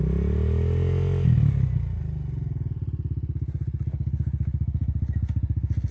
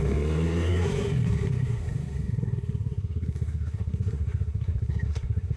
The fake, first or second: second